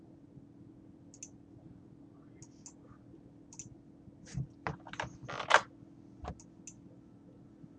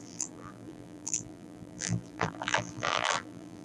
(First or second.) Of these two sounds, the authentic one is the first